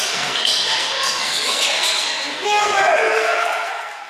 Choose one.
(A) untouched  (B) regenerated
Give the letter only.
B